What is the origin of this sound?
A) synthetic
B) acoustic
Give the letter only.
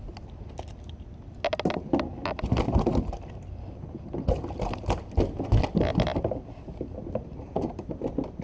B